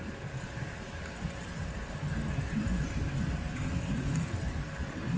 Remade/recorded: recorded